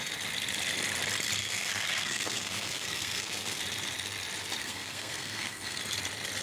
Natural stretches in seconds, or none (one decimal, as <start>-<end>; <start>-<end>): 0.0-1.4; 3.6-4.6; 5.8-6.4

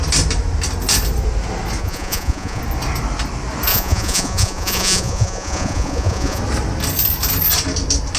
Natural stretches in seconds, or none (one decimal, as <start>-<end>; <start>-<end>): 0.0-1.8; 2.6-3.7; 6.4-8.2